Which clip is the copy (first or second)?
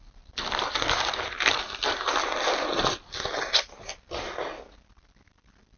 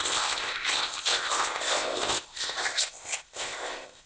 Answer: second